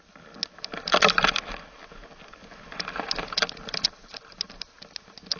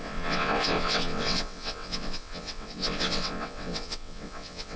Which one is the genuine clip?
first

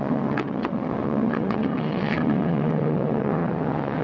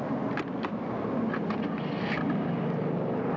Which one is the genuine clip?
second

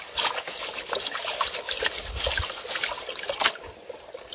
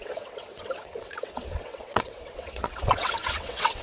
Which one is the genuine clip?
first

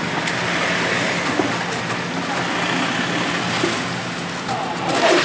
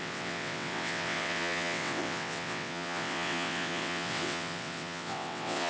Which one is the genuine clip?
first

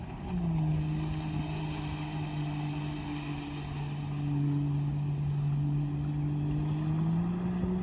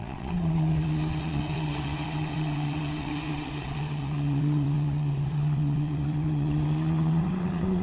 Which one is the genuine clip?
first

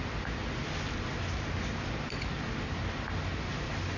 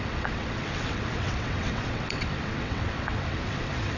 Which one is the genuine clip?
first